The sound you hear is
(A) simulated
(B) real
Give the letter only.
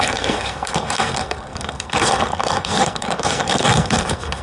A